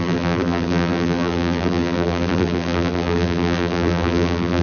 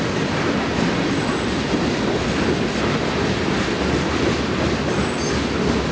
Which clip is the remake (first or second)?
first